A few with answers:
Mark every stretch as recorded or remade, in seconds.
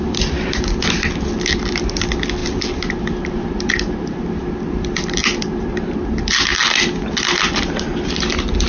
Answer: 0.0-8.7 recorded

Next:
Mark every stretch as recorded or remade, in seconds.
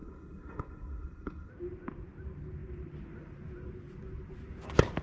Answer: 0.0-1.5 remade; 1.5-5.0 recorded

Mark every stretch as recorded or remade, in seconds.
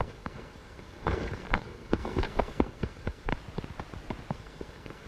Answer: 0.0-3.3 remade; 3.3-4.3 recorded; 4.3-5.1 remade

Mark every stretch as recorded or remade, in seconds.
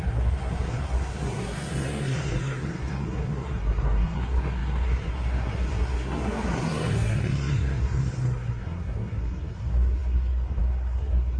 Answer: 0.0-11.4 remade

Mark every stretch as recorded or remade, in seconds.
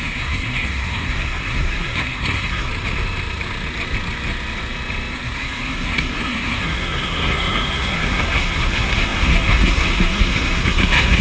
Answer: 0.0-2.7 remade; 2.7-5.1 recorded; 5.1-11.2 remade